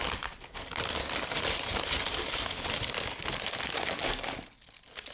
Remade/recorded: recorded